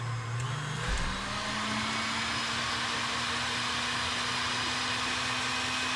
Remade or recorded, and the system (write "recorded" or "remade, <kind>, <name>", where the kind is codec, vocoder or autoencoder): recorded